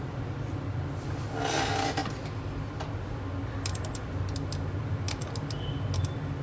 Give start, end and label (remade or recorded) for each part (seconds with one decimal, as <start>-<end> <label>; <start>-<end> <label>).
0.0-6.4 recorded